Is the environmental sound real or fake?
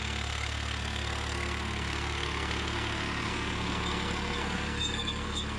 fake